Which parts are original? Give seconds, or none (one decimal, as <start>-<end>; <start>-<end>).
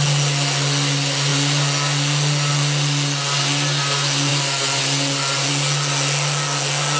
0.0-7.0